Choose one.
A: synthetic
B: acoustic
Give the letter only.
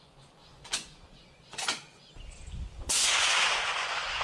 A